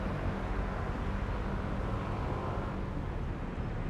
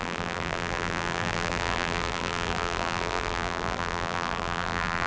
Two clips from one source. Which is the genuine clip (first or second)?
first